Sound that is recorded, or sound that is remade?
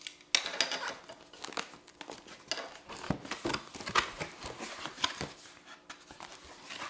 recorded